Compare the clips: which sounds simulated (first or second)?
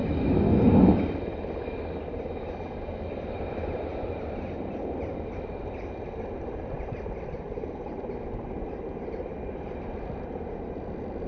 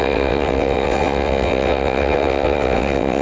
second